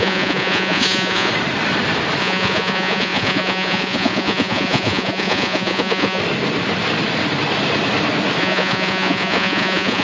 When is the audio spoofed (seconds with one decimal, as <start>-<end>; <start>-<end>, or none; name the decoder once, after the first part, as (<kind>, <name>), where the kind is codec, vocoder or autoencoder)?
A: 0.0-1.3 (vocoder, Vocos); 2.2-6.2; 8.4-10.0

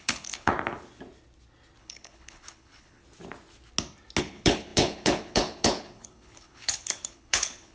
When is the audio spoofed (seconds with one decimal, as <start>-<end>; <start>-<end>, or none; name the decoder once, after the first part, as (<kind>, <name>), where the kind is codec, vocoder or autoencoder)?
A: 0.0-0.5 (codec, HILCodec); 1.8-3.0; 4.2-7.7

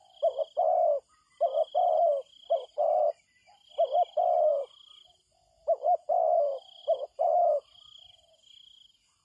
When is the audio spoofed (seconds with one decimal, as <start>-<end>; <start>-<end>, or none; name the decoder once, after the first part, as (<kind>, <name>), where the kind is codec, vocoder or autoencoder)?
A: none

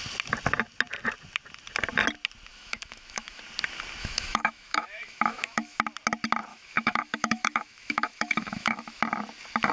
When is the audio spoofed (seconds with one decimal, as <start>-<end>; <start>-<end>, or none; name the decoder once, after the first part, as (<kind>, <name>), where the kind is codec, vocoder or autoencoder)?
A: 2.5-3.4 (autoencoder, DAC-VAE); 4.0-5.8; 6.5-9.0

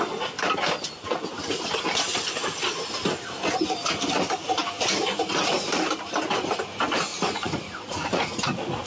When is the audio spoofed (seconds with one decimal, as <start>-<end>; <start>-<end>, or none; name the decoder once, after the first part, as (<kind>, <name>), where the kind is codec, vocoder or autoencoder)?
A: 7.1-8.4 (vocoder, Vocos)

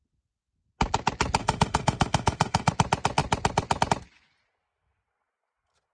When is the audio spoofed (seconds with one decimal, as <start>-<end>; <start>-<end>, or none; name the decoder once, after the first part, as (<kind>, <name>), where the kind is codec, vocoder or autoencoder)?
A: 1.4-2.7 (autoencoder, DAC-VAE)

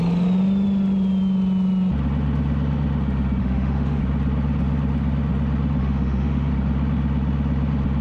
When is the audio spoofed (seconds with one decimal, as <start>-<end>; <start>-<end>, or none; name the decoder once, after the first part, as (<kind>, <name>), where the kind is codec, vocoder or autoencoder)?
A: 3.4-4.0 (autoencoder, DAC-VAE); 5.8-6.5